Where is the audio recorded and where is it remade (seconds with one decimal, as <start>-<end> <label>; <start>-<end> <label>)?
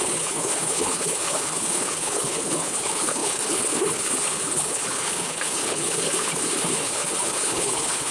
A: 0.0-8.1 remade